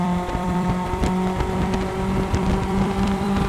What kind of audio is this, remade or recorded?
remade